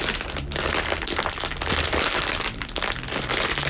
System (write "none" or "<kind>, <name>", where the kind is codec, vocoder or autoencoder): vocoder, BigVGAN v2